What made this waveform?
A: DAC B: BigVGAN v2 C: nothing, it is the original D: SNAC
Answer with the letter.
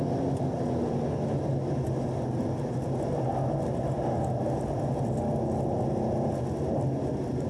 C